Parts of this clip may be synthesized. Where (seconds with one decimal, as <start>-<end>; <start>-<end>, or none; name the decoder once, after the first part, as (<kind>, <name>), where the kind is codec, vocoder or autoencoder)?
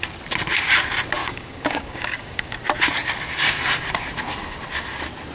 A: 1.2-2.5 (codec, DAC)